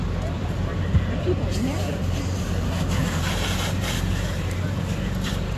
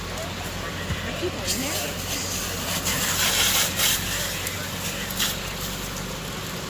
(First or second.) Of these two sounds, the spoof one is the first